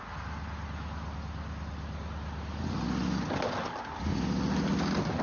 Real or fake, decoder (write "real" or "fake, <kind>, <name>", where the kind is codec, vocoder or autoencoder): real